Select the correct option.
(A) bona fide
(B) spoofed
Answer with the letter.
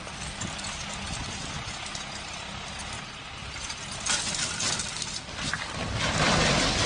A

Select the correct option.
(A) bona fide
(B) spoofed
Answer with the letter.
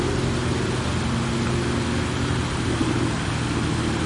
A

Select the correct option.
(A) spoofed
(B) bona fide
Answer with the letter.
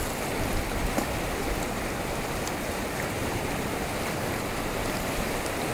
B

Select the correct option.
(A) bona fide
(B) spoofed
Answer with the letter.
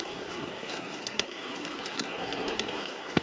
B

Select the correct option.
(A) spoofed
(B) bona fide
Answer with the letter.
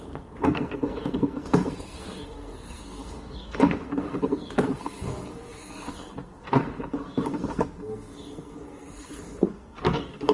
A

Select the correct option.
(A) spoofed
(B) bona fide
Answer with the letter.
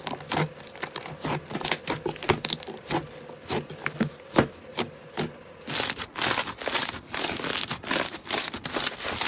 B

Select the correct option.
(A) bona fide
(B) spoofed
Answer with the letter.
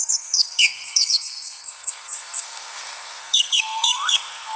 B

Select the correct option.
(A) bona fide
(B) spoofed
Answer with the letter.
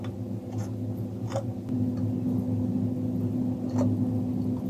A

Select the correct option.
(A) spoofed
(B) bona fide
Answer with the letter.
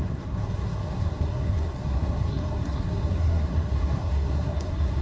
A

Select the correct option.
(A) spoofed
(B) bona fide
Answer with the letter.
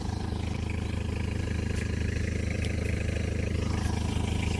B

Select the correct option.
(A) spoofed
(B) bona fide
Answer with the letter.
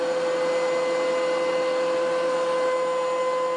B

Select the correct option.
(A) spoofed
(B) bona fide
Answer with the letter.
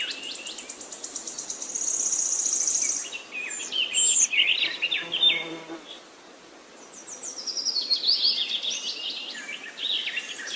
B